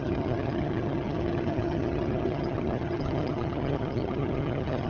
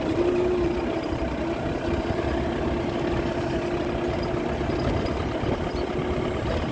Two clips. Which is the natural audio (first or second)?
second